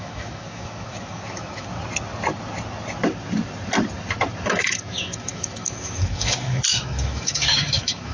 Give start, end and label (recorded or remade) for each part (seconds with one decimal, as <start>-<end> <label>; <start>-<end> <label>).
0.0-1.7 remade; 1.7-4.5 recorded; 4.5-8.1 remade